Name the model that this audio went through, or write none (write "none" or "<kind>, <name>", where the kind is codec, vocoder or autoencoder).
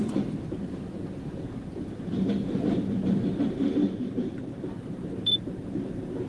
vocoder, BigVGAN v2